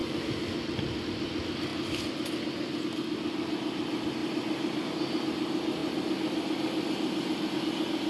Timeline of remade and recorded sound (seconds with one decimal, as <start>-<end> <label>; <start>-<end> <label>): 0.0-8.1 recorded

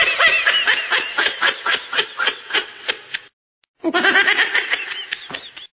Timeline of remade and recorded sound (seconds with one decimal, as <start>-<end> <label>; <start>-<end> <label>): 0.0-1.1 recorded; 1.1-3.0 remade; 3.0-5.7 recorded